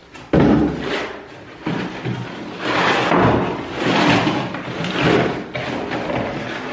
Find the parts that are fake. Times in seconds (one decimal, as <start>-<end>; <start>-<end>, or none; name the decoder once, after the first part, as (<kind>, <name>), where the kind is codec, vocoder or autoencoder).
none